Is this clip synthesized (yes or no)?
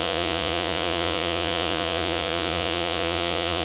yes